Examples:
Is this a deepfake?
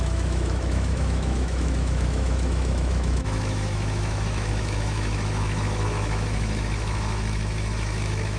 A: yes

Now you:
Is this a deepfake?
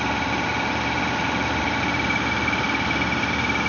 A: no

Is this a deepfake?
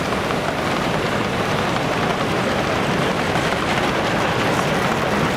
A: yes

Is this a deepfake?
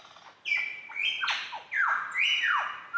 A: no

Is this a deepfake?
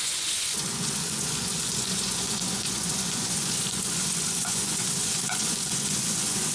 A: yes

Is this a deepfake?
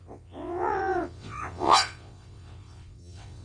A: yes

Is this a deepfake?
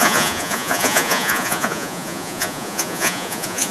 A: yes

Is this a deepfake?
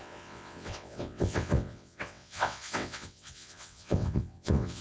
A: yes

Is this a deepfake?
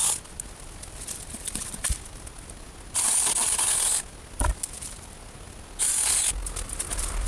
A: no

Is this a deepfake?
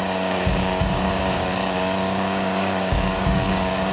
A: yes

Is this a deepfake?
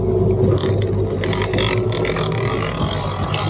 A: no